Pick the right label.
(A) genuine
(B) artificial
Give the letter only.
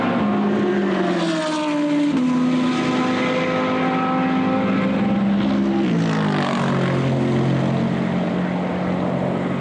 A